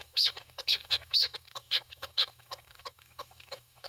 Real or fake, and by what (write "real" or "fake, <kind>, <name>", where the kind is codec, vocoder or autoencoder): fake, codec, DAC